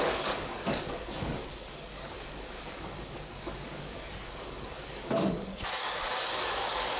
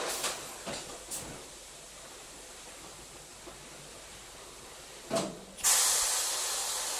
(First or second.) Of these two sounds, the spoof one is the first